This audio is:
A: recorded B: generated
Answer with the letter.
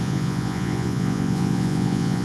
B